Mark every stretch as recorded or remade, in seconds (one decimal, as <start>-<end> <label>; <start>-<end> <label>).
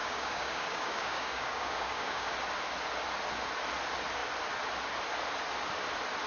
0.0-2.3 remade; 2.3-6.3 recorded